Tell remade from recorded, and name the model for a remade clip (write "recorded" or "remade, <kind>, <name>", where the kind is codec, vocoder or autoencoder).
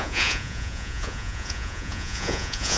remade, vocoder, Vocos